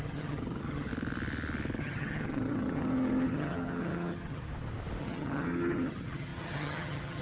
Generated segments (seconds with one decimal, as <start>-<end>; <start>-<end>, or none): 0.0-0.9; 1.8-4.4; 5.0-7.2